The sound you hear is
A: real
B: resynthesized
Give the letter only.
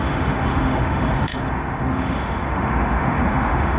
B